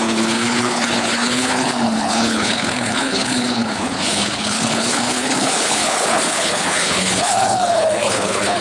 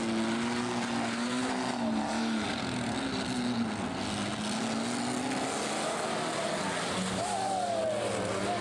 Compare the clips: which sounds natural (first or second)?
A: second